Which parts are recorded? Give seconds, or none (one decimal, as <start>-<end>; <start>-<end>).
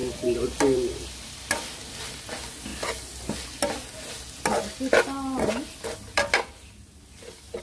0.0-7.6